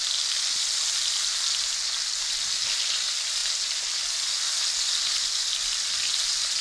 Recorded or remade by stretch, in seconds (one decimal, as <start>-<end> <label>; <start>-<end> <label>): 0.0-6.6 recorded